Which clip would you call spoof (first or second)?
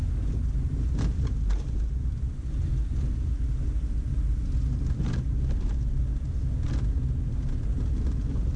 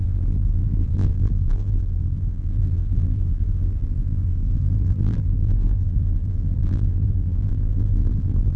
second